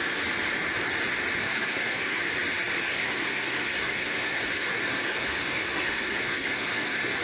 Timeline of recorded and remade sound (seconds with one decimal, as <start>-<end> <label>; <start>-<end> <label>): 0.0-1.4 recorded; 1.4-2.2 remade; 2.2-2.8 recorded; 2.8-7.2 remade